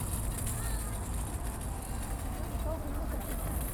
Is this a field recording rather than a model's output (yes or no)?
yes